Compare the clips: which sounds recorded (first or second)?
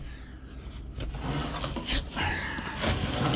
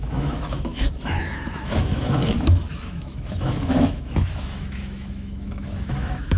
first